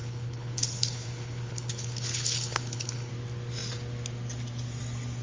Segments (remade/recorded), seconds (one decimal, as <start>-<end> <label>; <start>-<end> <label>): 0.0-3.1 remade; 3.1-5.2 recorded